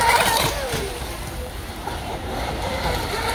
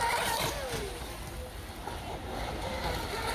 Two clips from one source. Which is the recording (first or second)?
second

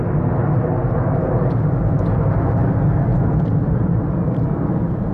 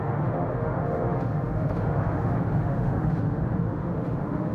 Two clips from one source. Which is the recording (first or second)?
first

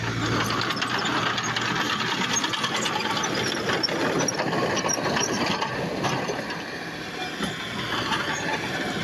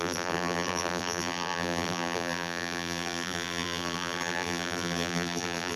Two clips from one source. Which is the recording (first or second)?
first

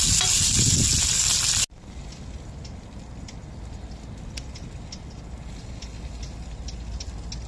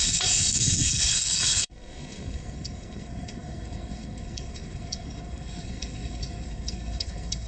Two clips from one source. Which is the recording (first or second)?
first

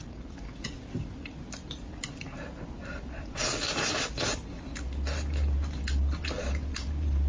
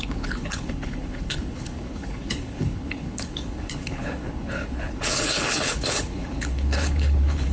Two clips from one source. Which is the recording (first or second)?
first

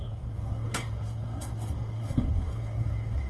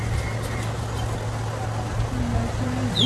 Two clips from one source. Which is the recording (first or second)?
second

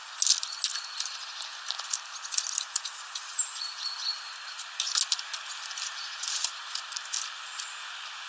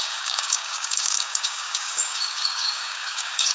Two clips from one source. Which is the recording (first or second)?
first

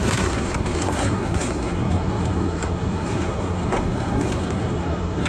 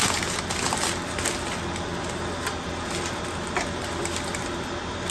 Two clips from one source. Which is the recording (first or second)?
second